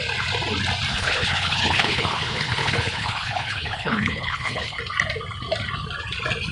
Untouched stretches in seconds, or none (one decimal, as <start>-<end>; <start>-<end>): 0.0-0.9; 4.8-6.5